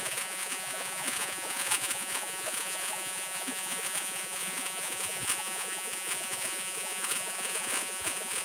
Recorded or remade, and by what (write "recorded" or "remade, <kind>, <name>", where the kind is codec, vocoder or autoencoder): remade, vocoder, Vocos